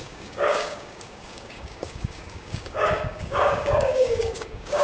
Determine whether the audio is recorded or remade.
remade